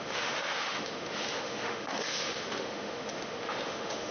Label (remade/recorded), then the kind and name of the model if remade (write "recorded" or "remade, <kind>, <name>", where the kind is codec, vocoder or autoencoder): remade, autoencoder, DAC-VAE